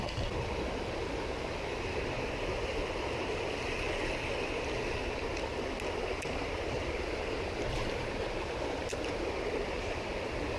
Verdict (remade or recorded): recorded